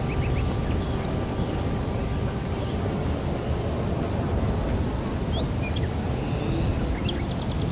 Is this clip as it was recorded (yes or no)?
yes